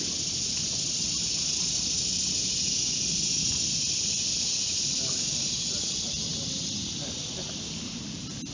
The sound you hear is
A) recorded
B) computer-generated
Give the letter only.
A